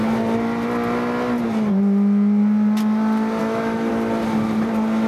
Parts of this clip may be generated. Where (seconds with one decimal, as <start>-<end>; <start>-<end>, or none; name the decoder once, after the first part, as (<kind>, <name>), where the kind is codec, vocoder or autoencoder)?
3.4-3.9 (autoencoder, DAC-VAE)